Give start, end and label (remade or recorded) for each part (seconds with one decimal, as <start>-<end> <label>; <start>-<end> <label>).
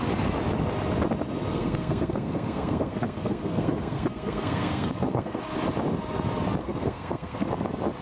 0.0-1.5 recorded; 1.5-5.4 remade; 5.4-6.6 recorded; 6.6-7.5 remade; 7.5-8.0 recorded